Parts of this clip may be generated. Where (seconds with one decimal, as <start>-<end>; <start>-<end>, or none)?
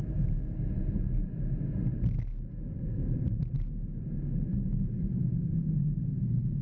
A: 4.5-5.1